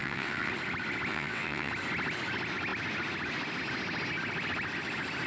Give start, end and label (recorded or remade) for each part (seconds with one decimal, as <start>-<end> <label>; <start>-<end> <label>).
0.0-0.5 remade; 0.5-1.1 recorded; 1.1-1.7 remade; 1.7-5.3 recorded

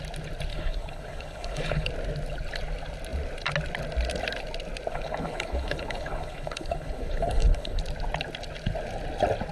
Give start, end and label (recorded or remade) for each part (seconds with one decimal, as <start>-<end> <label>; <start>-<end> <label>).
0.0-0.5 recorded; 0.5-1.9 remade; 1.9-4.9 recorded; 4.9-7.8 remade; 7.8-9.5 recorded

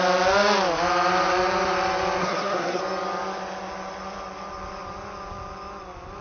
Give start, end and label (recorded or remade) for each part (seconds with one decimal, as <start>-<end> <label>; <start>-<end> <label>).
0.0-2.2 recorded; 2.2-2.8 remade; 2.8-6.2 recorded

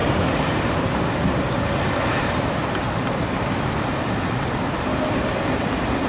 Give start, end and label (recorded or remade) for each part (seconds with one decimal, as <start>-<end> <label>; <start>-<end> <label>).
0.0-1.6 remade; 1.6-6.1 recorded

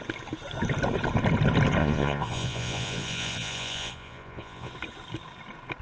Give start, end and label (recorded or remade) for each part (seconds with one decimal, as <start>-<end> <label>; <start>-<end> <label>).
0.0-1.8 recorded; 1.8-4.7 remade; 4.7-5.8 recorded

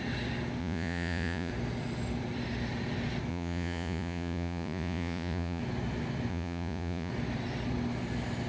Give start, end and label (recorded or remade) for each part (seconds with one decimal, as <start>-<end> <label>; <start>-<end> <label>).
0.0-0.6 recorded; 0.6-1.5 remade; 1.5-3.3 recorded; 3.3-5.6 remade; 5.6-6.3 recorded; 6.3-7.1 remade; 7.1-8.5 recorded